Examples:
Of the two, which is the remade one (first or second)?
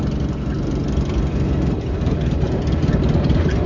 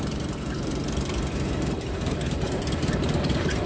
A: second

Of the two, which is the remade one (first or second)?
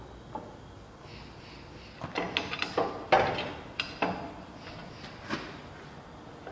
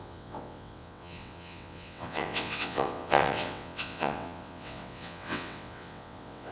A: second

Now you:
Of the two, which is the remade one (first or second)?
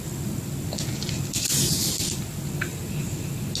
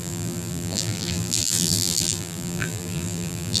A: second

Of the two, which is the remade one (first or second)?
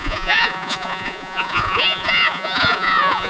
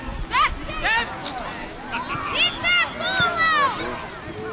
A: first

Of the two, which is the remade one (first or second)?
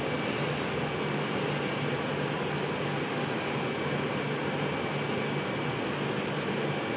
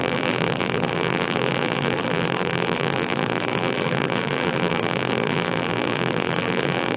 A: second